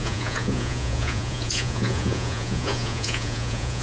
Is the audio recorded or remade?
remade